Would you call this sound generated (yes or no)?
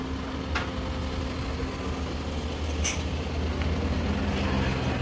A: no